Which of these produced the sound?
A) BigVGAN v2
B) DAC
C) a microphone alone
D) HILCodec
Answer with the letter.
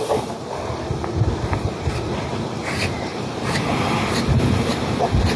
A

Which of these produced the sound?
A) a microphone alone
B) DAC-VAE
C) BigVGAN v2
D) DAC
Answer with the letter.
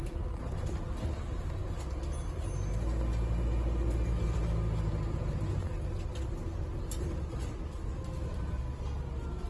A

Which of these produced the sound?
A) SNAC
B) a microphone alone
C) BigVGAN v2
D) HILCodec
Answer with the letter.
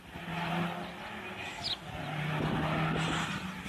B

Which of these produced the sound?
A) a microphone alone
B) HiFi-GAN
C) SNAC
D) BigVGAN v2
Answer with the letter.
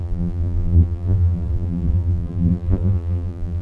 D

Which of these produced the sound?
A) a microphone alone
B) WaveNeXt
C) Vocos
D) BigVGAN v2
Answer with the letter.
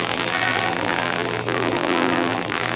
D